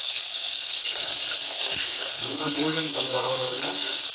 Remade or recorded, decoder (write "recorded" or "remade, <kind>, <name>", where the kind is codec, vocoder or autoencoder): remade, codec, SNAC